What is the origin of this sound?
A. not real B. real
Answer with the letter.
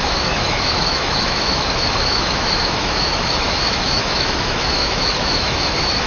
A